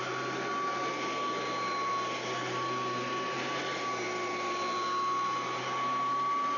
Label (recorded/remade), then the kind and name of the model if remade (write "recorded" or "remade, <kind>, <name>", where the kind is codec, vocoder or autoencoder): recorded